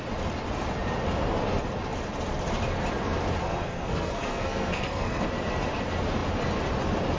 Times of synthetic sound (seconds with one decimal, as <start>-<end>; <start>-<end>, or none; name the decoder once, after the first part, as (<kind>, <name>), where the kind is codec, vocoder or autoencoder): 3.4-5.2 (codec, SNAC)